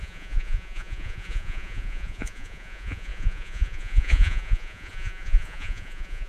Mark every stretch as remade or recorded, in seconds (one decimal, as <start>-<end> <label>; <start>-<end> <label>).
0.0-6.3 remade